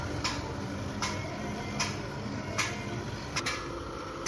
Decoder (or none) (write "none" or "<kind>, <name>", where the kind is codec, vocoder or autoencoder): none